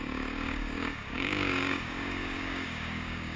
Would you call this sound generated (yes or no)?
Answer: yes